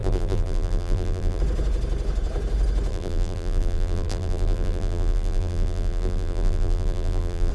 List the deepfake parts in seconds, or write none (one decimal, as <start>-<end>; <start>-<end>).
0.0-1.4; 2.9-7.5